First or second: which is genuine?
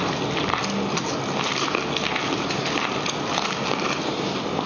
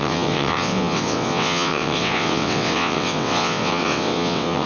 first